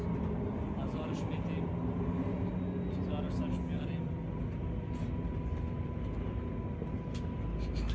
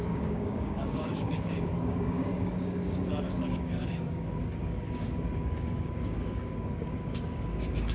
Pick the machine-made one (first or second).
second